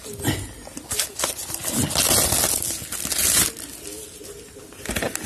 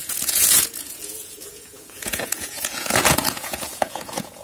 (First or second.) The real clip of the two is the first